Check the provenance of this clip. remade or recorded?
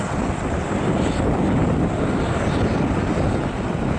recorded